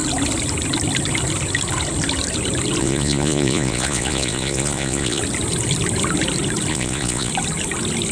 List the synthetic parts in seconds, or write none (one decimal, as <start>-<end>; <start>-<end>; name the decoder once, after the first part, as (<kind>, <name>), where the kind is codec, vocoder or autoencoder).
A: 2.8-5.2 (vocoder, Vocos); 6.7-7.3